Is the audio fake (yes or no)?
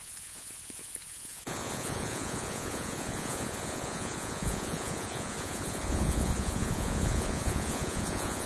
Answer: yes